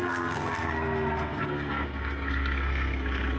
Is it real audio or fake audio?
fake